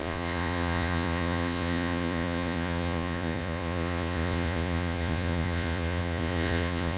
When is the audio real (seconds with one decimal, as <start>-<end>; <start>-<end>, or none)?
none